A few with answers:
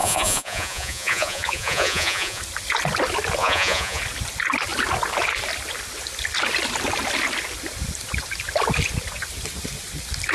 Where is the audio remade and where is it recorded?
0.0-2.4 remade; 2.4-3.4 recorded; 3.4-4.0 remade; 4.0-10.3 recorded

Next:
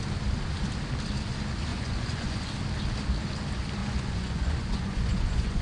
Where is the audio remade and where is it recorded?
0.0-1.7 recorded; 1.7-2.5 remade; 2.5-3.8 recorded; 3.8-5.6 remade

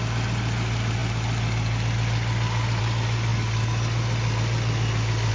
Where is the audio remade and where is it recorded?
0.0-5.3 recorded

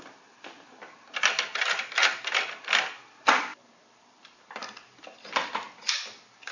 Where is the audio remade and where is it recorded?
0.0-6.5 recorded

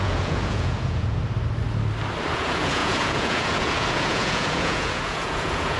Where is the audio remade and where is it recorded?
0.0-1.2 remade; 1.2-2.3 recorded; 2.3-5.8 remade

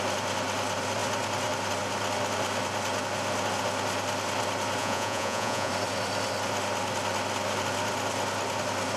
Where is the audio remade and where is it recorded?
0.0-4.8 recorded; 4.8-5.7 remade; 5.7-9.0 recorded